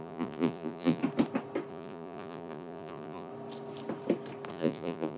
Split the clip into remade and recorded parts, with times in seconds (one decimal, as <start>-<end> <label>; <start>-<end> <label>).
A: 0.0-1.0 remade; 1.0-1.7 recorded; 1.7-3.3 remade; 3.3-4.5 recorded; 4.5-5.2 remade